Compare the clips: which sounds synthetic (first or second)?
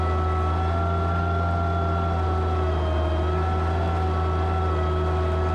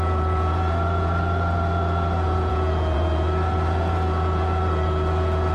second